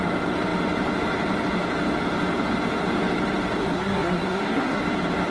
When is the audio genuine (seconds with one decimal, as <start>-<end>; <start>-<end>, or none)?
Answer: 0.0-3.6; 4.8-5.3